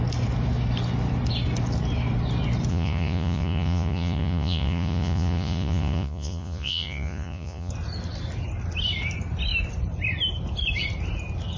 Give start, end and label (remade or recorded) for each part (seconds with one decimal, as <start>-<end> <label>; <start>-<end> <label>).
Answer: 0.0-2.7 recorded; 2.7-7.7 remade; 7.7-11.6 recorded